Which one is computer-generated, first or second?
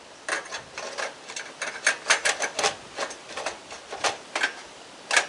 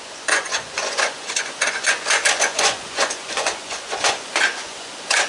second